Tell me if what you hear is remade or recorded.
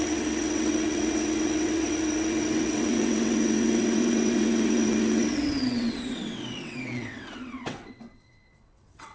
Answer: remade